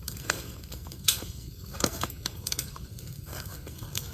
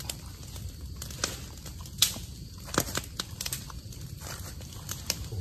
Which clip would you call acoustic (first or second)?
second